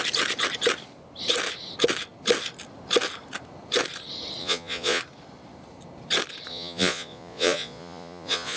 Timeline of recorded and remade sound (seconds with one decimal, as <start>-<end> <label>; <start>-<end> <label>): 0.0-4.4 recorded; 4.4-5.0 remade; 5.0-6.5 recorded; 6.5-8.6 remade